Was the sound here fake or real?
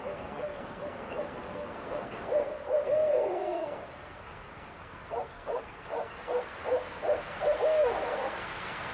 fake